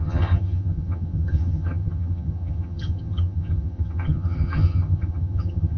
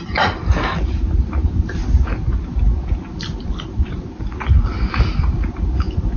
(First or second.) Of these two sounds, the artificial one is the first